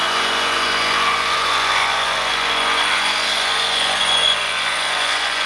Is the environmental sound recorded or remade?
remade